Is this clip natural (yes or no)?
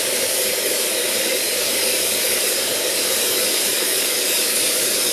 no